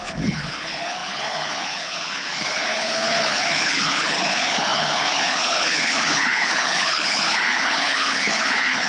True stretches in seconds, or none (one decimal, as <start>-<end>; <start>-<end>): none